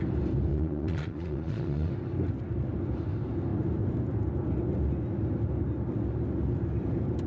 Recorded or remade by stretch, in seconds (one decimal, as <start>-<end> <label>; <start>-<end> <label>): 0.0-0.5 recorded; 0.5-1.9 remade; 1.9-7.3 recorded